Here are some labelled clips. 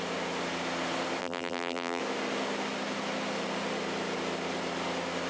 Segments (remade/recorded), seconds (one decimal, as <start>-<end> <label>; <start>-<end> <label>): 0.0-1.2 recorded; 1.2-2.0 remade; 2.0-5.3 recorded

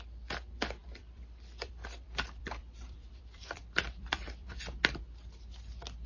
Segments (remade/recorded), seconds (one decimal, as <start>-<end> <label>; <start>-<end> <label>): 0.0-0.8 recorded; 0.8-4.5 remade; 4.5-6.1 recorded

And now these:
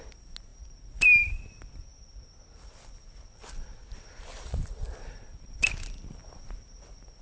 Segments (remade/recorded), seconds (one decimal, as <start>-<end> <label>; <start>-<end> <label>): 0.0-7.2 recorded